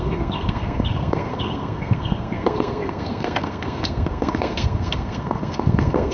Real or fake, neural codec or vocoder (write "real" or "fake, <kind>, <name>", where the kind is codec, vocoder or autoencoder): fake, codec, SNAC